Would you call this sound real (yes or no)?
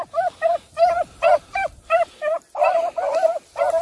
yes